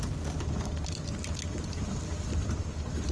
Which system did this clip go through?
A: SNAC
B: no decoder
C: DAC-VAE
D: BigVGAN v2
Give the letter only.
B